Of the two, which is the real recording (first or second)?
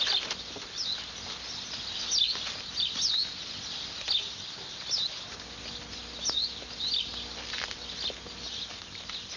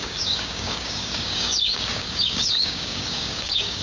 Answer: first